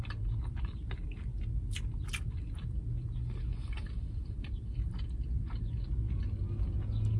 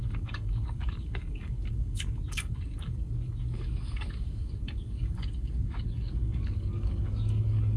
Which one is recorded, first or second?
first